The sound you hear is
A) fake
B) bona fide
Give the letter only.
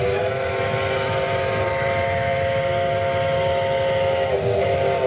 B